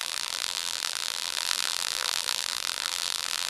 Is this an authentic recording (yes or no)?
no